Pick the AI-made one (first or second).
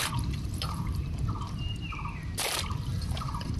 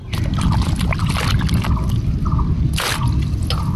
first